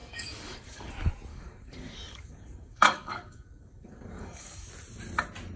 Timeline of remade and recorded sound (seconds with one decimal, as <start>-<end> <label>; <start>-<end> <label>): 0.0-0.9 remade; 0.9-1.3 recorded; 1.3-4.7 remade; 4.7-5.6 recorded